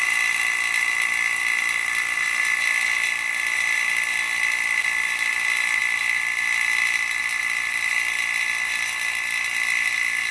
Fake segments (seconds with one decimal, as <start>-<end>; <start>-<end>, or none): none